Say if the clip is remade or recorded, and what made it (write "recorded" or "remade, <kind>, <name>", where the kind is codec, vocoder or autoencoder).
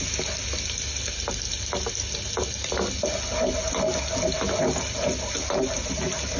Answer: recorded